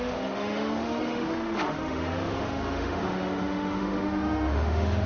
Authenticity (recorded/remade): remade